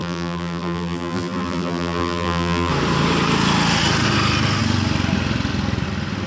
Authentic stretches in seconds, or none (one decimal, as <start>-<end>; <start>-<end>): 2.7-6.3